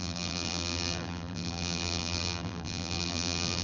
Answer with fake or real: fake